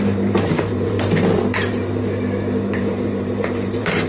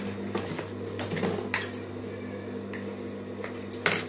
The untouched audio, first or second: second